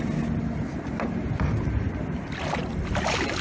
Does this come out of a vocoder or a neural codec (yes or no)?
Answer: no